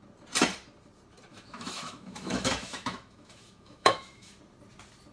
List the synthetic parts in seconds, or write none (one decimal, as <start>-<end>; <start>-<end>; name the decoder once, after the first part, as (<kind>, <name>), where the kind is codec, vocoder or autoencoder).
1.3-4.4 (autoencoder, DAC-VAE)